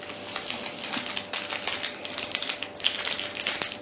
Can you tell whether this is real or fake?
real